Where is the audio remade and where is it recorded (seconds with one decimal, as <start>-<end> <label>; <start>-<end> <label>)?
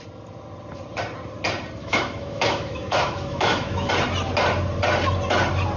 0.0-1.8 recorded; 1.8-3.9 remade; 3.9-5.8 recorded